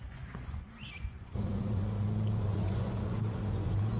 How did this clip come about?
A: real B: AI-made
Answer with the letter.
B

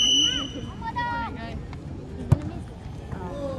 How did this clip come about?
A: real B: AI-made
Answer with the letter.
A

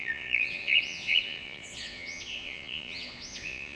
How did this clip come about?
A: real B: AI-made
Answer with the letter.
B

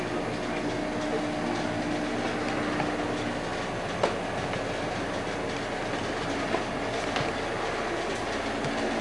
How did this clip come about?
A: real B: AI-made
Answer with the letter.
A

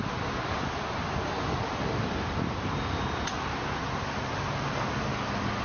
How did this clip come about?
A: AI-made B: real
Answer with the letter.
B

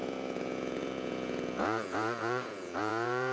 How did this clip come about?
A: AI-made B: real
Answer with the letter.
A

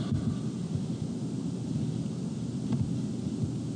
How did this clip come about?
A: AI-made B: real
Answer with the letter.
B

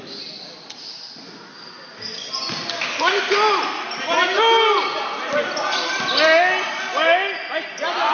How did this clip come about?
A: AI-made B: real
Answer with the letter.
B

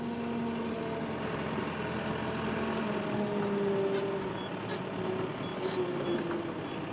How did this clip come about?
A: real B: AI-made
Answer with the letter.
A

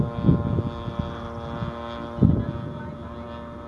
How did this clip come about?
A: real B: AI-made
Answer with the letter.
A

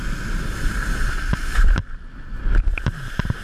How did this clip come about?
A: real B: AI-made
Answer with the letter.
A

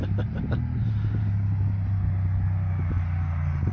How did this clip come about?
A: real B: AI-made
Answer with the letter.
A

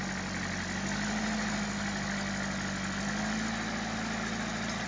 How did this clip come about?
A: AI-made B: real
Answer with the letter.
B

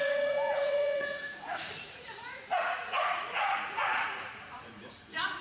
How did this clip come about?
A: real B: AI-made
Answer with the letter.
B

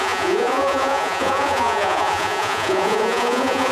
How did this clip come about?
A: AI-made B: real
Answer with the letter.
A